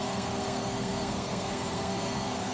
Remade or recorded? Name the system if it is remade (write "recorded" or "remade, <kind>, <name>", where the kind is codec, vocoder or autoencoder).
remade, codec, SNAC